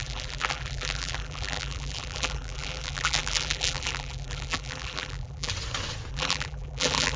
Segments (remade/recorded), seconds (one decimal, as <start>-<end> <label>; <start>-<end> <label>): 0.0-5.5 remade; 5.5-6.1 recorded; 6.1-7.2 remade